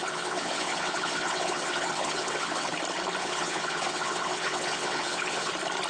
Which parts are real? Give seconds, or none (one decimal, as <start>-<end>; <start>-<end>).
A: 2.7-3.2; 5.5-5.9